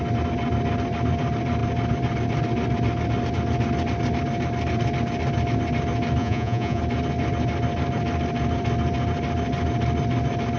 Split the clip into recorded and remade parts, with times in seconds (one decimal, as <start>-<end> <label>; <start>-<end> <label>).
0.0-6.2 recorded; 6.2-6.8 remade; 6.8-10.6 recorded